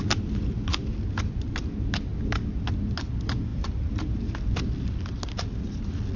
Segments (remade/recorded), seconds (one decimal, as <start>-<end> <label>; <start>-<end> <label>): 0.0-6.2 recorded